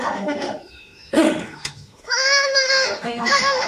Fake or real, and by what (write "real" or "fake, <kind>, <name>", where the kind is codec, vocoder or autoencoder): fake, autoencoder, DAC-VAE